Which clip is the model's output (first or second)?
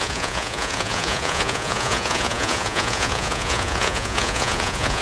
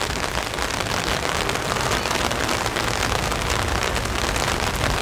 first